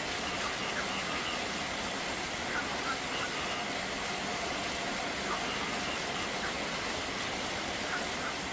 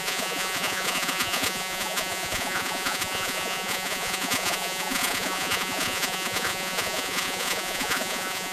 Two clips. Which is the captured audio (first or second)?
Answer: first